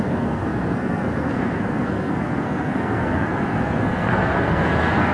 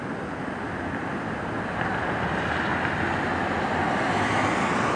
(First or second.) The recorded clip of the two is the second